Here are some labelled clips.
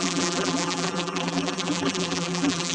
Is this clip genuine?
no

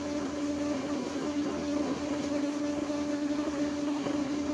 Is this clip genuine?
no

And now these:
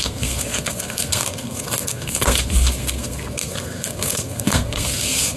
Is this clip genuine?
no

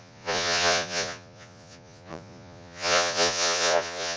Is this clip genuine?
no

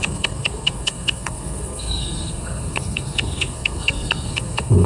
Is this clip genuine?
no